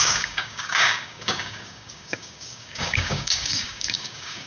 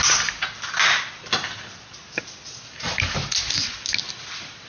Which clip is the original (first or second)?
second